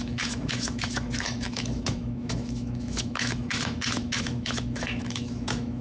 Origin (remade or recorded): remade